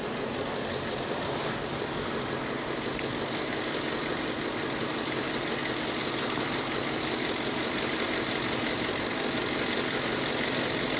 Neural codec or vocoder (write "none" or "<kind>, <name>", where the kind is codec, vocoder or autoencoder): none